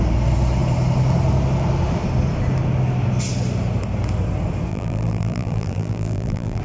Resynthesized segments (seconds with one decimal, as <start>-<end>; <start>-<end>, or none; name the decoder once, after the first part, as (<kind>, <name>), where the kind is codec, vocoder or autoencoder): 4.7-6.6 (vocoder, BigVGAN v2)